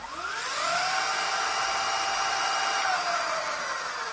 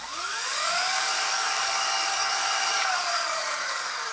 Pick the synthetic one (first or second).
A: second